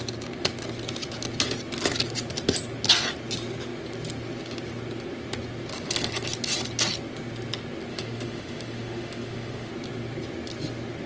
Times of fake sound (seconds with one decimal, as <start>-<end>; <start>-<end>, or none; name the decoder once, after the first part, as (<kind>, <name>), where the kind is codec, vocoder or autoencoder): 7.9-9.7 (autoencoder, DAC-VAE)